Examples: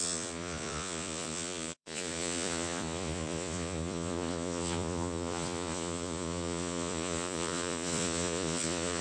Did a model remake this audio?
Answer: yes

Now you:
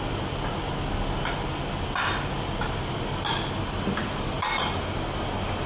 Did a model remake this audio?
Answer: no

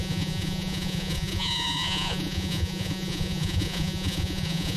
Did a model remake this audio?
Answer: yes